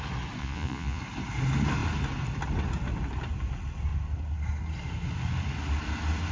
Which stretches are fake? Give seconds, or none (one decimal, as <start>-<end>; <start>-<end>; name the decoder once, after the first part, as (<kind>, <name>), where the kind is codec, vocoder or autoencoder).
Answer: 0.4-1.0 (vocoder, Vocos)